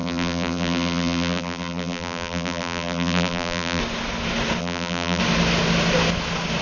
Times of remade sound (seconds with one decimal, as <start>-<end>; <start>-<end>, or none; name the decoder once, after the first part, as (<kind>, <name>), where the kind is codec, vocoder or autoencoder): 0.0-3.8 (vocoder, BigVGAN v2); 4.6-5.2

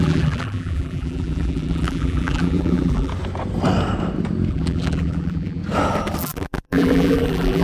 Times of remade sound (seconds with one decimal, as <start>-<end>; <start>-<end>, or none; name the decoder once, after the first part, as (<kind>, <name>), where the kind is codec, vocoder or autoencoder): 0.0-3.1 (vocoder, BigVGAN v2); 4.5-5.6; 6.2-7.6

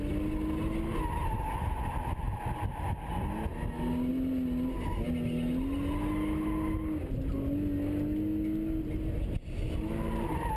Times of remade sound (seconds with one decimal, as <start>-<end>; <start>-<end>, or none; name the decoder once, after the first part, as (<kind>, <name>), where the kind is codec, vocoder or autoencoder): none

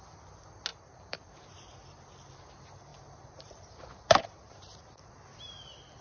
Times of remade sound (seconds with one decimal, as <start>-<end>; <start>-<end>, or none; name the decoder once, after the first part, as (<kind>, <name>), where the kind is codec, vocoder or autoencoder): 0.7-1.3 (vocoder, BigVGAN v2); 2.9-5.1